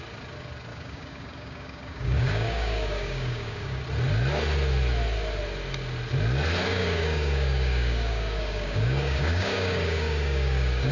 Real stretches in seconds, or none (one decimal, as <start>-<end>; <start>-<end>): 0.0-0.7; 3.8-6.7